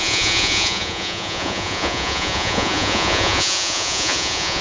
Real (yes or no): no